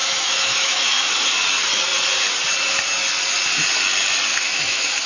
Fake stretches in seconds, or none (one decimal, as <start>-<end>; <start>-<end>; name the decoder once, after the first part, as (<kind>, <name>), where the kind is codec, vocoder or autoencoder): 0.0-1.3 (autoencoder, DAC-VAE); 4.3-5.1